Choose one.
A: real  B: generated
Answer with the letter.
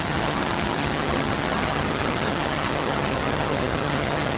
B